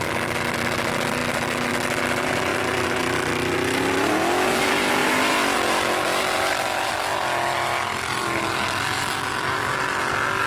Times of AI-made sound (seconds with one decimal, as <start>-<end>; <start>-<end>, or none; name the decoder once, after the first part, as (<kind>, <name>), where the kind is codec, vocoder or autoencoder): none

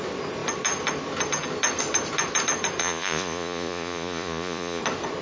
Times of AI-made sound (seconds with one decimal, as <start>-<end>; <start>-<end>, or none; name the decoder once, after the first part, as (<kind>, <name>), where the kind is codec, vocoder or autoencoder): 2.8-4.8 (vocoder, Vocos)

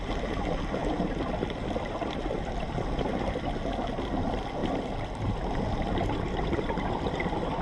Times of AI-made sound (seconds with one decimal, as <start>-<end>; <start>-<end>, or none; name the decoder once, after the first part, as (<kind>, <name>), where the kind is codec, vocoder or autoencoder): 0.8-2.5 (vocoder, BigVGAN v2); 4.6-7.1